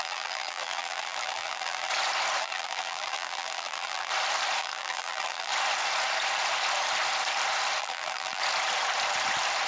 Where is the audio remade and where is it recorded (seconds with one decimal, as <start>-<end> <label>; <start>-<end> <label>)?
0.0-1.9 remade; 1.9-2.4 recorded; 2.4-4.1 remade; 4.1-4.6 recorded; 4.6-5.5 remade; 5.5-7.8 recorded; 7.8-8.4 remade; 8.4-9.7 recorded